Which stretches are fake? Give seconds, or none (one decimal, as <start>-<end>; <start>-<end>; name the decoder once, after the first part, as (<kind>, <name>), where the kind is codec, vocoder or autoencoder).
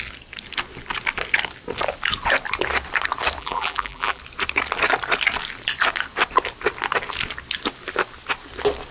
3.4-4.2 (vocoder, BigVGAN v2)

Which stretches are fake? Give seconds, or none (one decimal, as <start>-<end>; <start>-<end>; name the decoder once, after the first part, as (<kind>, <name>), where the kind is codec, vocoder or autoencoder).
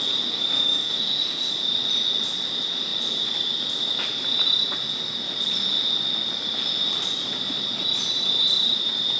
0.4-1.5 (autoencoder, DAC-VAE)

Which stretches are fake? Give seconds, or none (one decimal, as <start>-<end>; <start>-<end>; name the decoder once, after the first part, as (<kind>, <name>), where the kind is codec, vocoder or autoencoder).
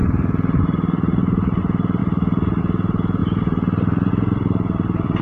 none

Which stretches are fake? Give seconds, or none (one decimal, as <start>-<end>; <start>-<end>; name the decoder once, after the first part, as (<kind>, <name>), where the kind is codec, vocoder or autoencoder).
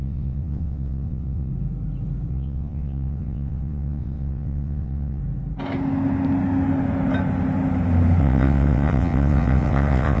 0.0-1.5 (vocoder, WaveNeXt); 2.3-5.2; 8.2-10.2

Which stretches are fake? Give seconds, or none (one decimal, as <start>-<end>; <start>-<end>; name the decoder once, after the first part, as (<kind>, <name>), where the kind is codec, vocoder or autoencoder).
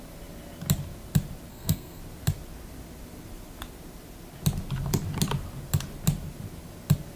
1.5-2.0 (codec, SNAC)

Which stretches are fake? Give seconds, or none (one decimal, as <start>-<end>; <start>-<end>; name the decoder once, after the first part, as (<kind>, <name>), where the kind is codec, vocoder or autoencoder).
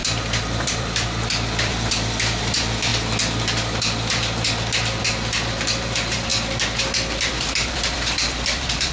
0.0-2.9 (vocoder, BigVGAN v2); 5.0-6.3; 7.2-8.9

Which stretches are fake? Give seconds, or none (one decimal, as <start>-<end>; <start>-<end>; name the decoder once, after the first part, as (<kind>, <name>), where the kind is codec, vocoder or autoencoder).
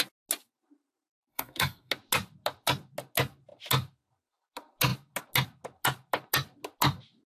1.3-1.9 (codec, SNAC)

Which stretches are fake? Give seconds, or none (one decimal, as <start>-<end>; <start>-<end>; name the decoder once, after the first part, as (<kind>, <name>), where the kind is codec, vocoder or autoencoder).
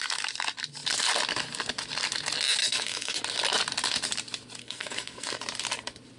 2.6-3.2 (codec, SNAC); 4.6-5.4